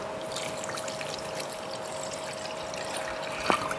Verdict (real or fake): real